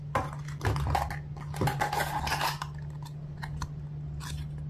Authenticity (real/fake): real